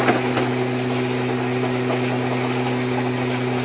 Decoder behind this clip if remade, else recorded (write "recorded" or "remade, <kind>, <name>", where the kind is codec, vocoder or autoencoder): recorded